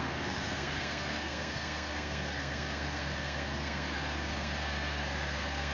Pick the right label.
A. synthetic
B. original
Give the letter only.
A